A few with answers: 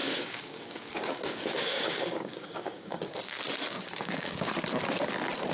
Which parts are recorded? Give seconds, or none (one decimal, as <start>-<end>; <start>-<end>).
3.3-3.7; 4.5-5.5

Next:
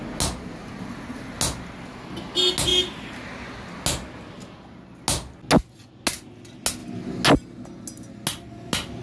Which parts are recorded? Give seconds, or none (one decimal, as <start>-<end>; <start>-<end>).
0.0-9.0

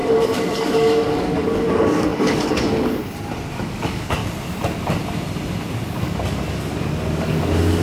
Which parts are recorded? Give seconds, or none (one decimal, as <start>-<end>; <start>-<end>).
3.0-3.5; 4.2-5.9

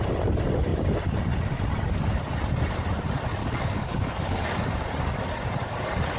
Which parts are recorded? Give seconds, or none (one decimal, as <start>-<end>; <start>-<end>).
0.0-3.4; 4.6-6.2